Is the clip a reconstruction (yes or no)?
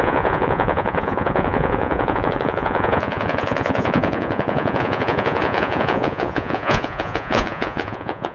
yes